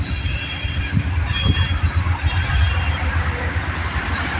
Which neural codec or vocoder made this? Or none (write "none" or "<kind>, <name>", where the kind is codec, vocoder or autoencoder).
vocoder, BigVGAN v2